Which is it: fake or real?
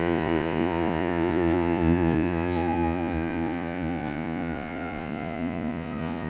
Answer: fake